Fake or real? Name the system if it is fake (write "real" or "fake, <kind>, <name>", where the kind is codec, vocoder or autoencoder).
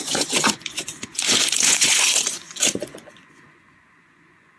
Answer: fake, vocoder, Vocos